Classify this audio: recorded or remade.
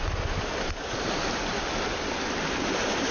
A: recorded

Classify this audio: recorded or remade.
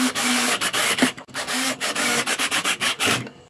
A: remade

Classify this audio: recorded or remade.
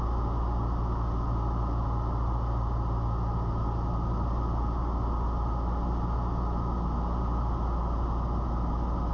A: recorded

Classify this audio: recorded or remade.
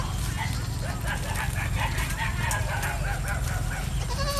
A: recorded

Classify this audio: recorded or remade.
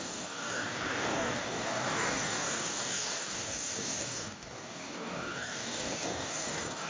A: remade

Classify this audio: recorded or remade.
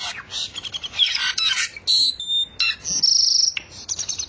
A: recorded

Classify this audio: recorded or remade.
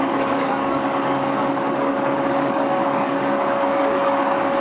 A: remade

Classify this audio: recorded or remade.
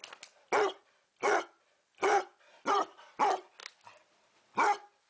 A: recorded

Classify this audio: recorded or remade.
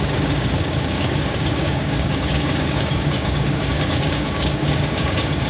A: remade